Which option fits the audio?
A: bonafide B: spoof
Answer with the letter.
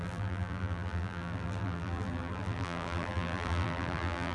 B